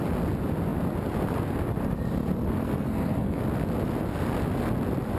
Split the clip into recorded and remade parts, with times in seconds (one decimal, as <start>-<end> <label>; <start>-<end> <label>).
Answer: 0.0-2.6 recorded; 2.6-3.4 remade; 3.4-5.2 recorded